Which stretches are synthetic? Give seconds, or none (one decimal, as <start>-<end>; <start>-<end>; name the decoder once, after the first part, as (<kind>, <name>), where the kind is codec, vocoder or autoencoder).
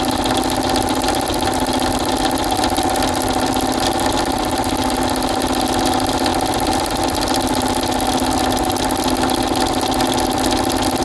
none